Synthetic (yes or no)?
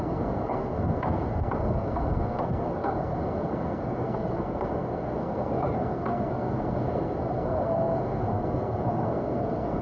yes